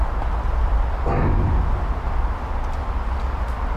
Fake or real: real